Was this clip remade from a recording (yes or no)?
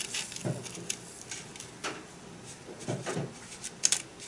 no